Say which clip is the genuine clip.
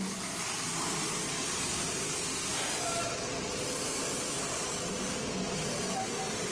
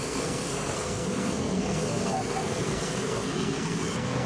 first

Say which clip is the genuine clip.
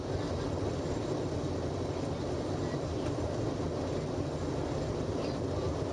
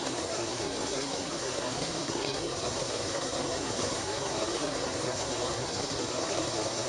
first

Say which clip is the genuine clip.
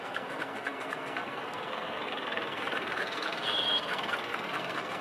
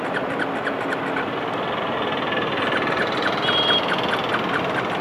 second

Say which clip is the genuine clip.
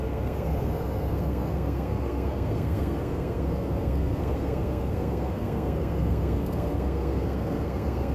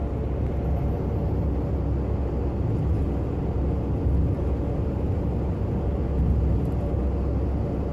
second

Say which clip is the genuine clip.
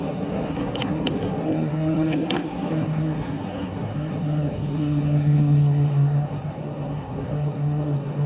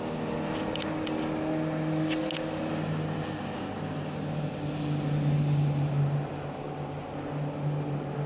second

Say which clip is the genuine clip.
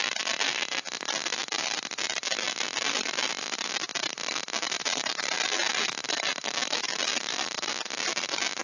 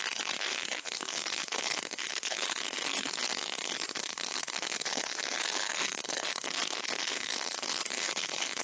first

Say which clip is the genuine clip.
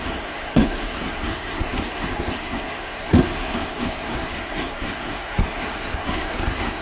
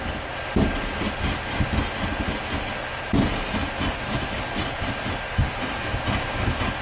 second